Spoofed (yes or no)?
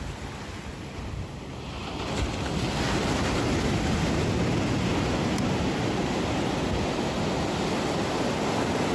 no